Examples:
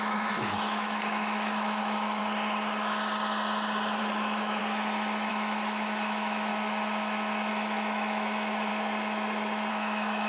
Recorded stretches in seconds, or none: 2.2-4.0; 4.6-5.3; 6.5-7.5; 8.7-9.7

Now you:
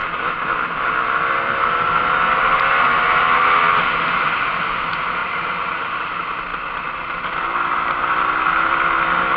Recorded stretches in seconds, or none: 0.0-5.2; 5.8-9.4

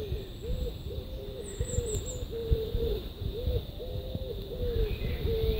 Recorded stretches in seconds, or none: 0.0-0.5; 1.9-2.4; 3.5-5.6

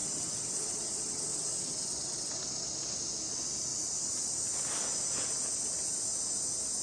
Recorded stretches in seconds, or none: 2.3-6.8